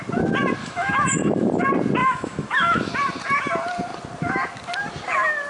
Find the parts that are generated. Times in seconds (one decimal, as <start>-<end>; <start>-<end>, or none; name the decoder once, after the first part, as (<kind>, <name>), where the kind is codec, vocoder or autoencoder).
0.6-1.5 (autoencoder, DAC-VAE); 2.0-2.9